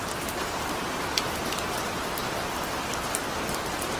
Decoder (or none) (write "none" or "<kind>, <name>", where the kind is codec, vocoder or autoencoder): vocoder, BigVGAN v2